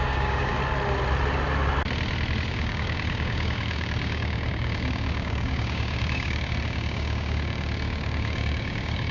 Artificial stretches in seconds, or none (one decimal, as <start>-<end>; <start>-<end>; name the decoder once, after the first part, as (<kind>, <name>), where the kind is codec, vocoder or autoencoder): 0.0-0.6 (codec, DAC); 2.5-9.1